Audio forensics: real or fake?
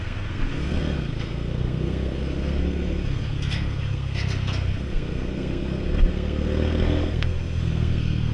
fake